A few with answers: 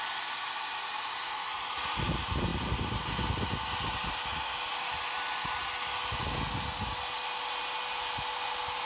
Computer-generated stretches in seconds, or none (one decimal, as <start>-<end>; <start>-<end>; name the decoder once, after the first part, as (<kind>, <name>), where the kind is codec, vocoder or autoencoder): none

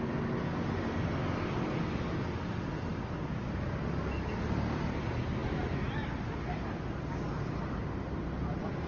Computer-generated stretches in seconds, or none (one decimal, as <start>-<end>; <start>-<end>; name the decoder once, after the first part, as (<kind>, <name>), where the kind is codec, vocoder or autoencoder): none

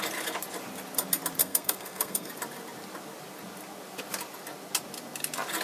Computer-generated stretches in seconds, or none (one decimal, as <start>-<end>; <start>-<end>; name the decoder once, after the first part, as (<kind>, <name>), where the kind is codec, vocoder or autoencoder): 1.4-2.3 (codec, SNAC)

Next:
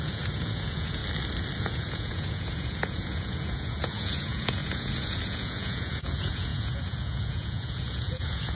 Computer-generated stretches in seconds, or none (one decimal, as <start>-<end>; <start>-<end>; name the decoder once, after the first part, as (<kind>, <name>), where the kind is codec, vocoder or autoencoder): 0.0-1.0 (vocoder, Vocos); 1.6-8.5

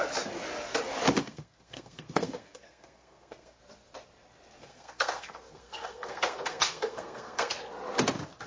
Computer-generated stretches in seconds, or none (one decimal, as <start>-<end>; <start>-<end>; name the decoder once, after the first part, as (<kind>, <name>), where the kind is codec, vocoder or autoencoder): 1.2-3.6 (codec, SNAC); 4.6-7.6

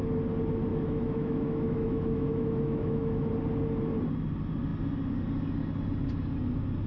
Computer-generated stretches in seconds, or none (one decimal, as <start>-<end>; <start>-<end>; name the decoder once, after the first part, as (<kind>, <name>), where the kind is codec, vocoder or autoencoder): 0.7-3.3 (autoencoder, DAC-VAE)

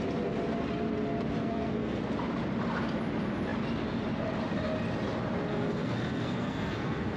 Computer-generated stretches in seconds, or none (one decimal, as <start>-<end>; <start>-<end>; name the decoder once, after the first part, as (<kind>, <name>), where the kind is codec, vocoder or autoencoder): 1.4-2.0 (codec, SNAC); 5.5-7.2

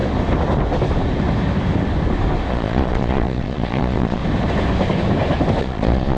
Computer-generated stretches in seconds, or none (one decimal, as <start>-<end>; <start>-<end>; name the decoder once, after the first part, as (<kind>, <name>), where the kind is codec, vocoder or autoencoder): 2.5-4.2 (vocoder, Vocos); 5.6-6.2